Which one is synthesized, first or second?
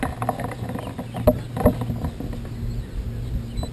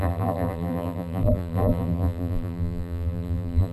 second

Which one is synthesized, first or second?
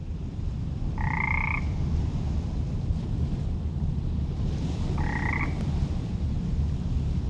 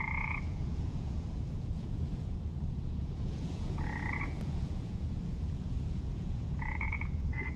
second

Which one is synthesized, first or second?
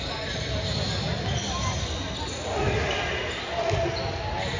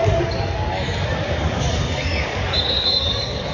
second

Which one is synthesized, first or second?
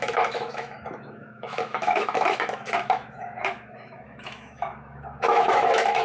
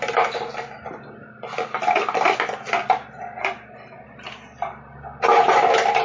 first